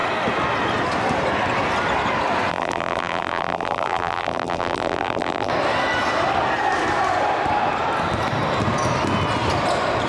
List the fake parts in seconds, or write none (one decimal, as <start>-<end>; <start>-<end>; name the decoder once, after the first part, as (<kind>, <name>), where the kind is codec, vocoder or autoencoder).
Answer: 2.5-5.5 (vocoder, BigVGAN v2)